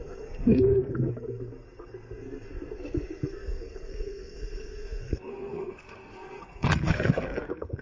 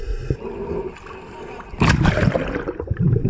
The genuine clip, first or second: second